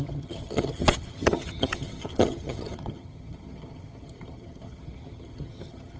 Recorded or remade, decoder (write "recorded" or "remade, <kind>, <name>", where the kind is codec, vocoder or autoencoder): remade, vocoder, HiFi-GAN